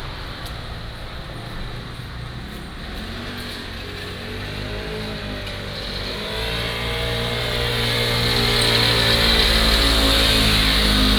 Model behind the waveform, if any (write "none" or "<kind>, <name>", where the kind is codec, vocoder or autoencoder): none